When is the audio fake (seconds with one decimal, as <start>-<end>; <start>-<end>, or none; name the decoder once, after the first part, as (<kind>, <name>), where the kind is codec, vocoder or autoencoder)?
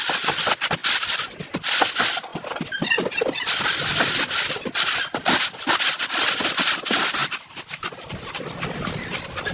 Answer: none